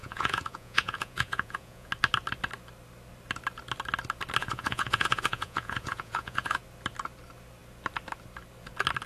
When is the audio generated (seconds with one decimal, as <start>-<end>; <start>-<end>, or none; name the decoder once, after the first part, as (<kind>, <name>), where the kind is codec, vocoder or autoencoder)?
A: 0.0-1.9 (vocoder, Vocos); 4.4-6.6